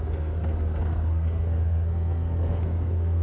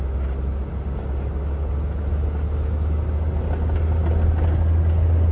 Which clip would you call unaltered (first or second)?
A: second